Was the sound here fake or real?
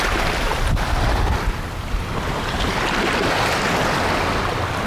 real